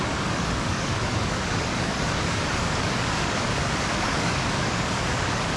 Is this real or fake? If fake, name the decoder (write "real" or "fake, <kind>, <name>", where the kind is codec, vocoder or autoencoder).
fake, codec, DAC